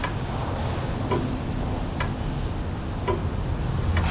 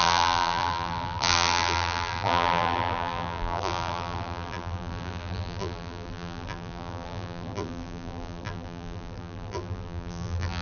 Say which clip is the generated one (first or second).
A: second